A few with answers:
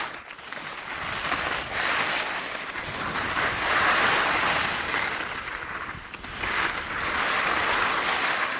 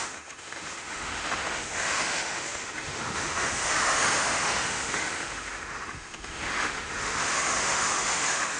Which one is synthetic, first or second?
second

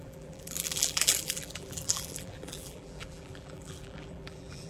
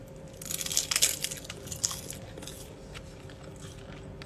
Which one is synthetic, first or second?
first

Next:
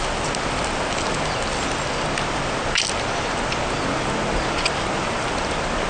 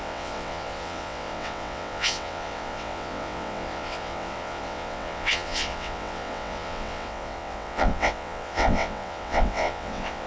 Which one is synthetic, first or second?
second